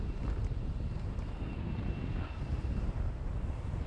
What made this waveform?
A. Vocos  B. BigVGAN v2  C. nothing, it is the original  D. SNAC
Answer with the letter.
C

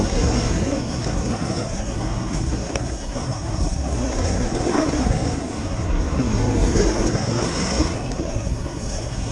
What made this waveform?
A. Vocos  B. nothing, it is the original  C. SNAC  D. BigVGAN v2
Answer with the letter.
C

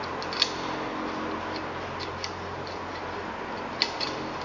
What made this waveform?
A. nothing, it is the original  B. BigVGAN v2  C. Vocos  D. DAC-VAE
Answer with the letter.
A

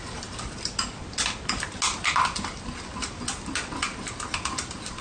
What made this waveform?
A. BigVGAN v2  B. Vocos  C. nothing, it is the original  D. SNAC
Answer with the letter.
C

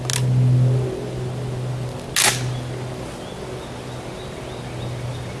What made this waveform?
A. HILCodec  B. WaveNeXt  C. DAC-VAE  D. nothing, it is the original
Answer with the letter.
D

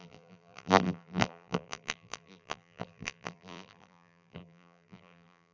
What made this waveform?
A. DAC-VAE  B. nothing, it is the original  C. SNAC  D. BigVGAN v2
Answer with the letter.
D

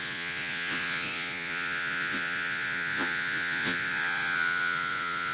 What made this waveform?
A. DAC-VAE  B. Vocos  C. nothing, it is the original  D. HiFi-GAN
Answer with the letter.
B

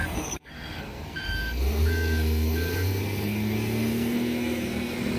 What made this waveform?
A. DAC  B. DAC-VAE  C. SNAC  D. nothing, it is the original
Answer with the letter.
C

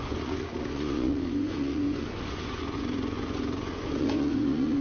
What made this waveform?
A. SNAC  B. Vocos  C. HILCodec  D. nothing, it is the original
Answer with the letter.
B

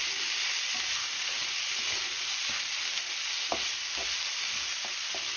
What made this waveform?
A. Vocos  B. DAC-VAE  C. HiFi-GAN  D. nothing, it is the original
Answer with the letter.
D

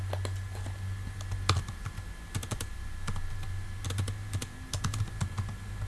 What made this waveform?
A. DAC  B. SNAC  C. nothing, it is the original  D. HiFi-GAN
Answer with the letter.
C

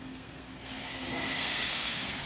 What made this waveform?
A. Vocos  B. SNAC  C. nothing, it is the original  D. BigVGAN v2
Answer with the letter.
B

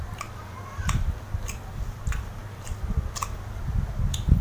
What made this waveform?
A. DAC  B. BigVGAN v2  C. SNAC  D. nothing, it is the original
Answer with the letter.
B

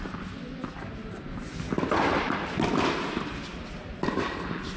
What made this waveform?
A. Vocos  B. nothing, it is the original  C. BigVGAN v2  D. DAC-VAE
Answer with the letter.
B